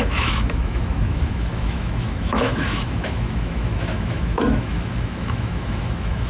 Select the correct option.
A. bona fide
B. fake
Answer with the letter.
B